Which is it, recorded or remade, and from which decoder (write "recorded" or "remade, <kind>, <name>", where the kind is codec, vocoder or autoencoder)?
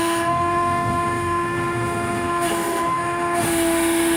remade, autoencoder, DAC-VAE